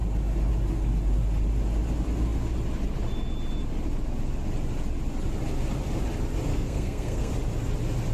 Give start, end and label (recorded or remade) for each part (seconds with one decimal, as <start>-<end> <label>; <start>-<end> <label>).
0.0-6.5 recorded; 6.5-7.3 remade; 7.3-8.1 recorded